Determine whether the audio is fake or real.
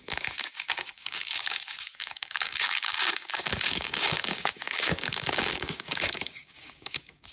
fake